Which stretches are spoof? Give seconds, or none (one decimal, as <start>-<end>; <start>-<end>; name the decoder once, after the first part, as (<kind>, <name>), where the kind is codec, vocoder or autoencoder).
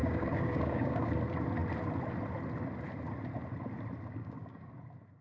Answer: 0.0-1.1 (codec, DAC); 4.2-4.7